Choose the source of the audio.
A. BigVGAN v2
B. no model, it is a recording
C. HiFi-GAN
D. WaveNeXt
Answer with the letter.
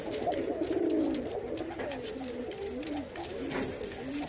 B